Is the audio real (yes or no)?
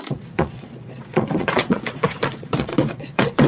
no